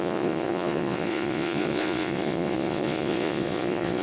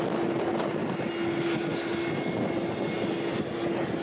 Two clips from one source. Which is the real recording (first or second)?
second